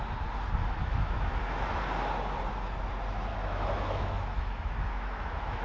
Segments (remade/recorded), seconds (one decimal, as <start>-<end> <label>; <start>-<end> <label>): 0.0-0.6 recorded; 0.6-1.8 remade; 1.8-3.3 recorded; 3.3-5.6 remade